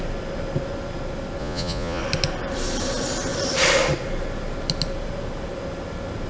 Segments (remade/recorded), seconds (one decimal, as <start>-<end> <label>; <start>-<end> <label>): 0.0-1.4 recorded; 1.4-2.0 remade; 2.0-6.3 recorded